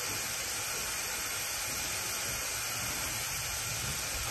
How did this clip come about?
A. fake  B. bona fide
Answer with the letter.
B